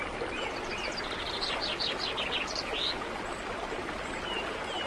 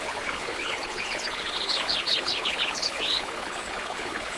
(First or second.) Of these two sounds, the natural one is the first